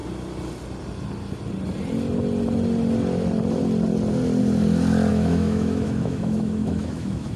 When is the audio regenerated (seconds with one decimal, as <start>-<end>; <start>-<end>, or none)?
5.1-7.4